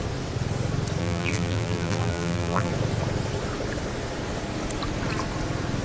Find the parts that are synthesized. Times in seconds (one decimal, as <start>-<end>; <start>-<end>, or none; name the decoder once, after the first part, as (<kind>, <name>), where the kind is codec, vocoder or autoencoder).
1.0-2.7 (vocoder, BigVGAN v2)